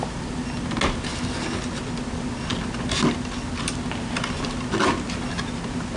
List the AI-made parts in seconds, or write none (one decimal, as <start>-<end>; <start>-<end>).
none